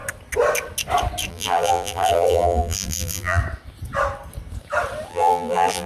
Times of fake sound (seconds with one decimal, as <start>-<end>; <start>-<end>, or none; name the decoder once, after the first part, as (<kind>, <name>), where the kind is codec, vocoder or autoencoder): 1.3-3.4 (vocoder, BigVGAN v2); 5.1-5.9